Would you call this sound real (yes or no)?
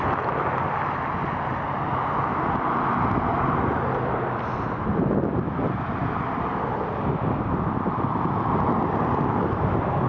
yes